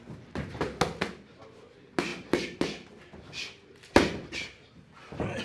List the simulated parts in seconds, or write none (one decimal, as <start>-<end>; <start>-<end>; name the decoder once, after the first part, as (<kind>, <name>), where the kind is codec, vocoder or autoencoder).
none

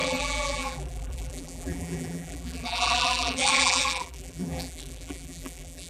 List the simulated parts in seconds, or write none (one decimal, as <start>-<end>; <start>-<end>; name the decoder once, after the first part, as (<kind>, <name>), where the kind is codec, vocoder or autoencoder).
0.0-5.9 (vocoder, BigVGAN v2)

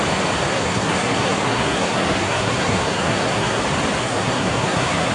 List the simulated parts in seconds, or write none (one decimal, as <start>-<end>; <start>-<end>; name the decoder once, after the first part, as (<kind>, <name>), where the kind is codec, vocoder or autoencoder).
0.5-3.6 (codec, SNAC); 4.0-5.1